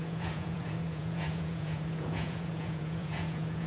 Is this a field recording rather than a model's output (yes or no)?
no